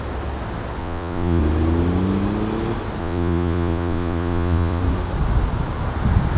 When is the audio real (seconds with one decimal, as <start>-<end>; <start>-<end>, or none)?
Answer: 0.0-0.8; 1.4-3.0; 4.8-6.4